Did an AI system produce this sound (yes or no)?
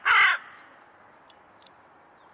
no